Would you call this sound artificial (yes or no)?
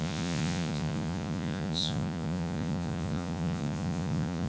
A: yes